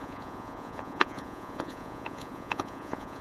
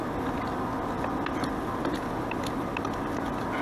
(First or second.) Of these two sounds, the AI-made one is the first